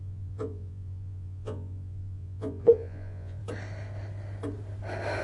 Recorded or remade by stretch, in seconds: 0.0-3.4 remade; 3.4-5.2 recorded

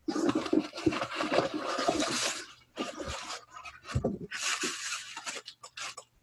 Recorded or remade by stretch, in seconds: 0.0-3.7 remade; 3.7-6.2 recorded

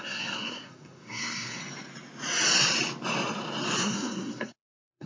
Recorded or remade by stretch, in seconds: 0.0-1.6 remade; 1.6-3.8 recorded; 3.8-5.1 remade

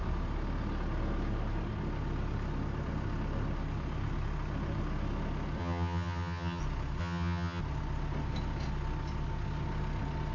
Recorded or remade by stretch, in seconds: 0.0-5.6 recorded; 5.6-6.6 remade; 6.6-7.0 recorded; 7.0-7.6 remade; 7.6-10.3 recorded

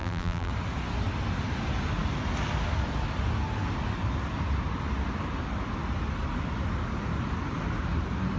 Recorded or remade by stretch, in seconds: 0.0-0.5 remade; 0.5-8.4 recorded

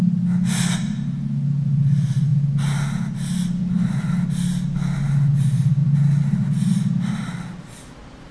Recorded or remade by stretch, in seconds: 0.0-8.3 recorded

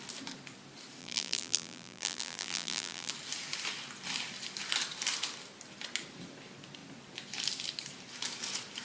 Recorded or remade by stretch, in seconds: 0.0-1.0 recorded; 1.0-3.1 remade; 3.1-8.8 recorded

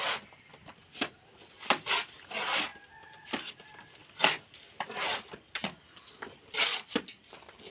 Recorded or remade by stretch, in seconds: 0.0-6.7 recorded; 6.7-7.3 remade; 7.3-7.7 recorded